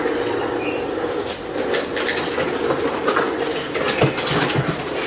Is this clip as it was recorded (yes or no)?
yes